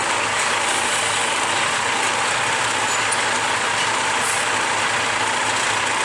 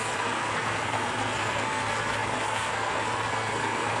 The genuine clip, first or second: first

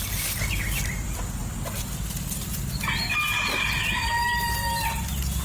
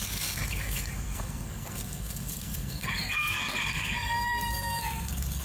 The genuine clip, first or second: first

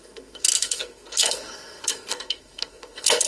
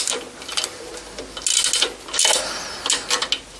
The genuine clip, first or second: second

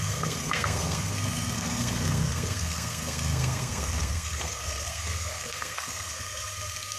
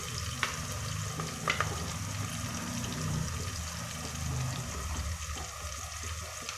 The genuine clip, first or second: second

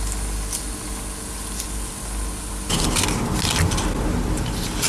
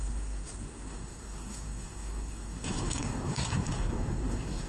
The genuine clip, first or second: first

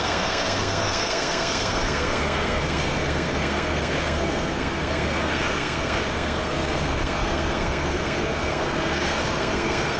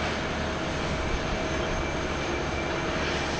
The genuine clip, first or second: second